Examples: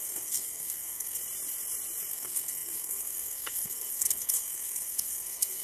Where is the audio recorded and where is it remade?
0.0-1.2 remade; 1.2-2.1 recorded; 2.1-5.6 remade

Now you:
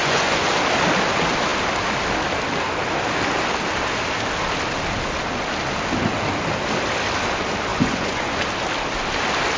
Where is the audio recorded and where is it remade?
0.0-0.5 remade; 0.5-7.7 recorded; 7.7-8.4 remade; 8.4-9.6 recorded

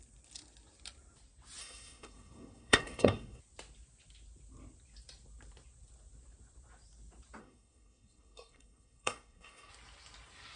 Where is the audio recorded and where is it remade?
0.0-1.6 recorded; 1.6-3.4 remade; 3.4-7.4 recorded; 7.4-9.7 remade; 9.7-10.6 recorded